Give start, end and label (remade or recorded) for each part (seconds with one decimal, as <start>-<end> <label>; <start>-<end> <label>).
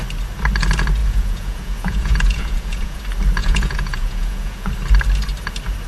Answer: 0.0-1.0 recorded; 1.0-3.0 remade; 3.0-3.4 recorded; 3.4-4.7 remade; 4.7-5.9 recorded